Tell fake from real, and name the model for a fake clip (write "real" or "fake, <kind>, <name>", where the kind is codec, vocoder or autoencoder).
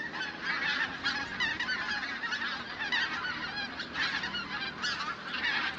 real